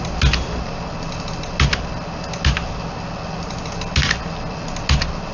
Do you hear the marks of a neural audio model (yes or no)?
no